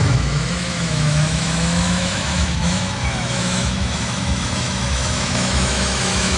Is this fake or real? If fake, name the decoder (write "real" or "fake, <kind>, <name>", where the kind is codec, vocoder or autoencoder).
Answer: fake, autoencoder, DAC-VAE